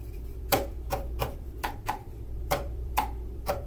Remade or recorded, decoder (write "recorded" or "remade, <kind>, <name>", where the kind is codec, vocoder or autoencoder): remade, vocoder, BigVGAN v2